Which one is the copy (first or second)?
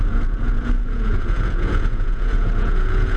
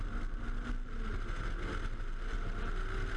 first